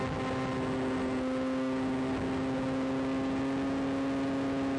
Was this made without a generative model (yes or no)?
yes